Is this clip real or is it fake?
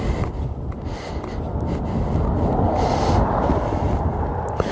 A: real